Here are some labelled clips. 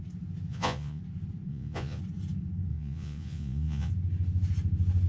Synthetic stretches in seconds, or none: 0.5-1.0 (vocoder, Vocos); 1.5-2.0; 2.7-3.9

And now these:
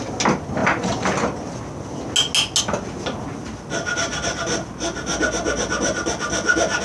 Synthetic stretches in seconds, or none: none

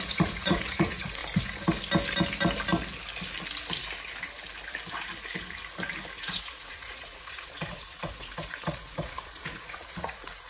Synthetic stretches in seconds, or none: 0.0-1.2 (vocoder, Vocos); 6.2-10.5